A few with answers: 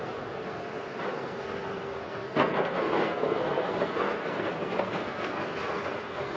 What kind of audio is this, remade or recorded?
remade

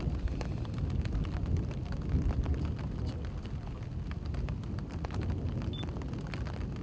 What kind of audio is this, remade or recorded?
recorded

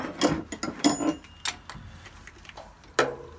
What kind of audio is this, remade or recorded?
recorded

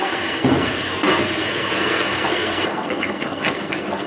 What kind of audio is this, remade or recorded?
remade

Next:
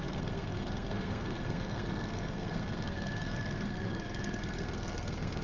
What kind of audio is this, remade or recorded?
remade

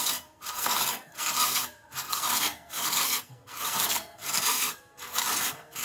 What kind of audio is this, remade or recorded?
remade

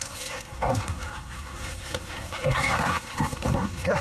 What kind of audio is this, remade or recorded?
remade